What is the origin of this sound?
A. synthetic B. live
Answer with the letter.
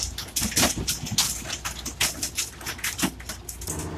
B